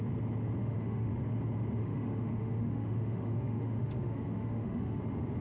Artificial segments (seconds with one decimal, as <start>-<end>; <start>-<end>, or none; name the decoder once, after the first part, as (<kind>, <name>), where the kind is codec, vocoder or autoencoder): 0.6-1.1 (autoencoder, DAC-VAE); 1.8-5.0